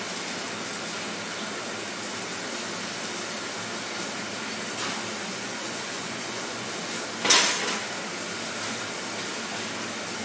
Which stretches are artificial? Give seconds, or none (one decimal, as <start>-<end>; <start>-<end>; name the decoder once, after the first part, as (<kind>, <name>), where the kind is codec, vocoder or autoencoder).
5.3-6.7 (vocoder, Vocos)

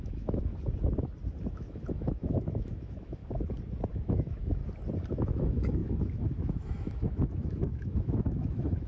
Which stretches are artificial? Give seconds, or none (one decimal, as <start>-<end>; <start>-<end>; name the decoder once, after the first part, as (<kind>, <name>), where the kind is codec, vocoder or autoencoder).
0.0-0.5 (autoencoder, DAC-VAE); 1.5-3.2; 3.9-4.6; 5.1-8.9

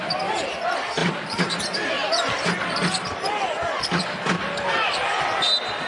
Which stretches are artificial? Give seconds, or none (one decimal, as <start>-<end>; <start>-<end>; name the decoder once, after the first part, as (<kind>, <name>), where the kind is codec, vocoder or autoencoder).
1.0-1.6 (vocoder, BigVGAN v2)

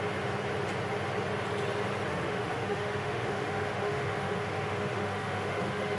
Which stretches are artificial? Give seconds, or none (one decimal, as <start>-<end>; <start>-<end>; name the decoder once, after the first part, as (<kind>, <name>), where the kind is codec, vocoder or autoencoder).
2.1-6.0 (autoencoder, DAC-VAE)

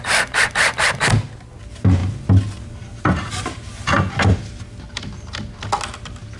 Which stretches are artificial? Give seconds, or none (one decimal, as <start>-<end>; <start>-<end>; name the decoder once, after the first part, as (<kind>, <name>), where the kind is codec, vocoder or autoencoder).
none

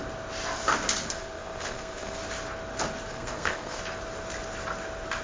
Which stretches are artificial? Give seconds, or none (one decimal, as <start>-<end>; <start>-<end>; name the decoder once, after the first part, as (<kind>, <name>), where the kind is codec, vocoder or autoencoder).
1.0-2.2 (codec, SNAC); 3.1-3.8

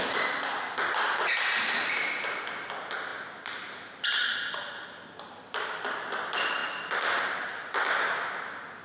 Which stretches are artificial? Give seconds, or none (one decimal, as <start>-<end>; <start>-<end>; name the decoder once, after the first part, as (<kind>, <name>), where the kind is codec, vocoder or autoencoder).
none